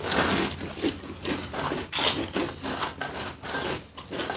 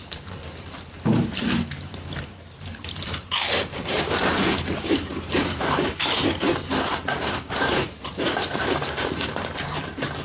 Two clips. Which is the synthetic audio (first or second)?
second